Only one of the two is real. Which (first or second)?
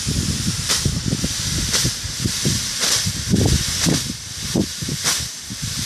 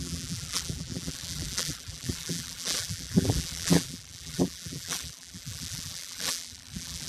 first